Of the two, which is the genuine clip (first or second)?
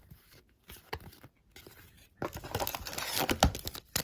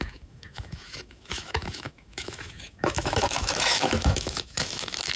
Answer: first